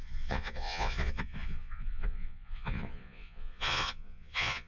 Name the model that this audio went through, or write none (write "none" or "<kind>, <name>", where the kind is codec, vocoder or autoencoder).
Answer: vocoder, Vocos